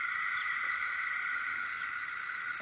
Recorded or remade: remade